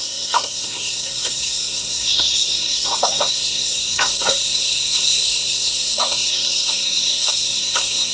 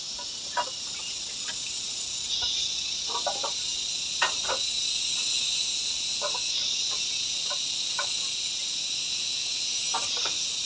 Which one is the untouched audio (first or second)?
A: second